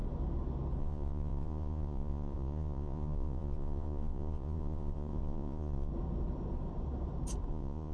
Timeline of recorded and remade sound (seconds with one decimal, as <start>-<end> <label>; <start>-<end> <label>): 0.0-0.8 recorded; 0.8-5.9 remade; 5.9-7.5 recorded; 7.5-7.9 remade